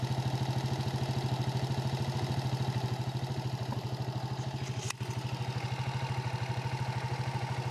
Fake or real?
real